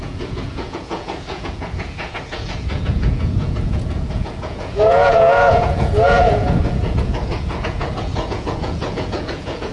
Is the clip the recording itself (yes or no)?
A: no